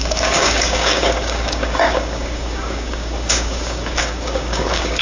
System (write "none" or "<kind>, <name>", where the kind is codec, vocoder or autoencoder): codec, DAC